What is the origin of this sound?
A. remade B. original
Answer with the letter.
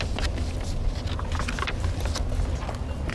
B